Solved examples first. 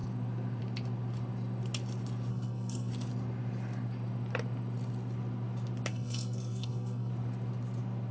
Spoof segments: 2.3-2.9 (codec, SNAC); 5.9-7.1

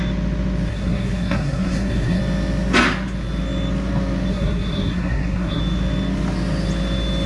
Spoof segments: 0.7-2.2 (codec, SNAC); 4.3-5.6

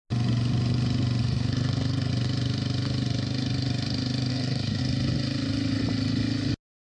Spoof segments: 1.2-2.1 (codec, SNAC); 4.3-4.8

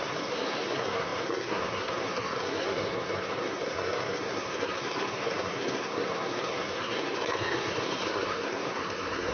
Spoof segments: 0.0-9.3 (codec, SNAC)

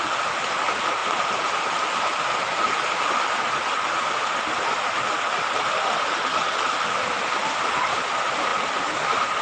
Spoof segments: none

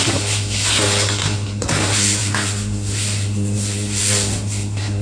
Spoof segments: 0.0-5.0 (codec, SNAC)